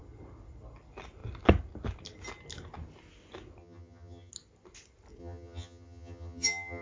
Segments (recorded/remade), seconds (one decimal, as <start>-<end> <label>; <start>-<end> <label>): 0.0-3.6 recorded; 3.6-4.3 remade; 4.3-5.2 recorded; 5.2-6.8 remade